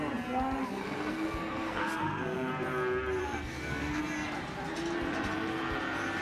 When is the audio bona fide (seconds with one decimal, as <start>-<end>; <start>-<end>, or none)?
0.0-0.6; 2.5-3.2; 4.0-6.2